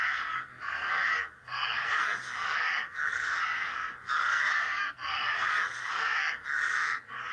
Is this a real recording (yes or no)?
no